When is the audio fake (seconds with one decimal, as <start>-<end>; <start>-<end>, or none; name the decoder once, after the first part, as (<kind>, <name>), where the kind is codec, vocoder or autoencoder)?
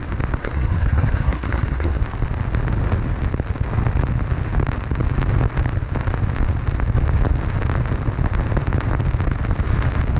0.4-2.0 (codec, SNAC)